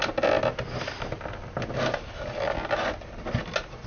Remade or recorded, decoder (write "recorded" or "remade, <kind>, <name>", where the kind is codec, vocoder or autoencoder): recorded